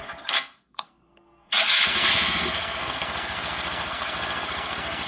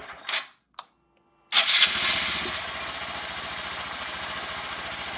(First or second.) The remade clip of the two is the first